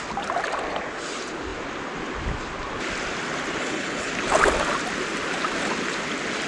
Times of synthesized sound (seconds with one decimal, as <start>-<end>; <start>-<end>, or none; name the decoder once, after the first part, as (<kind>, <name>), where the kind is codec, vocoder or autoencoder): 3.6-4.1 (codec, HILCodec)